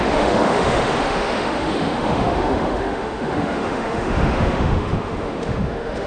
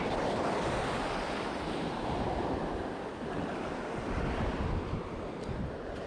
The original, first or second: second